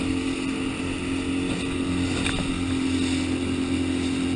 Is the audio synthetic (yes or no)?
no